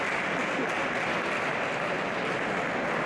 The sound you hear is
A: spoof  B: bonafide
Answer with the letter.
B